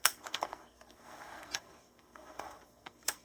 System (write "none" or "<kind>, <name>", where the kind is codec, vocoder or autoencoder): codec, SNAC